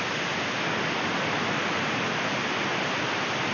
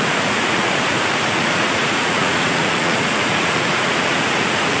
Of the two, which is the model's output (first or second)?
second